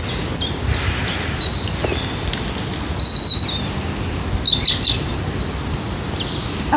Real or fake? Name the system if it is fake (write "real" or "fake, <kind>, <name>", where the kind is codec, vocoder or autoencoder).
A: real